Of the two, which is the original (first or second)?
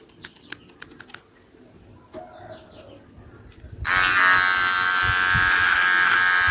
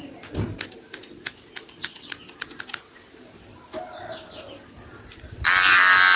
first